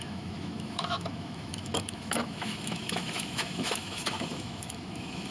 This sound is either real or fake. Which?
fake